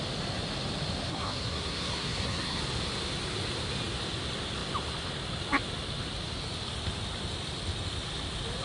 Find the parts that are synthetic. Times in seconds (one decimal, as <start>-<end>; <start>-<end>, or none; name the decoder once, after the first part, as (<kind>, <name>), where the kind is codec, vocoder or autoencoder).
1.1-2.6 (codec, SNAC)